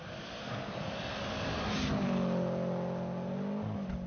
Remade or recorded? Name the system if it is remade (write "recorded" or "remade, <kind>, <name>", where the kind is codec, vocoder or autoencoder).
recorded